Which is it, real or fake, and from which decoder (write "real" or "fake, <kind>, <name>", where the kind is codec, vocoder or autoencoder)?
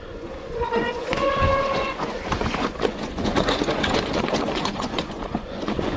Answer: fake, vocoder, Vocos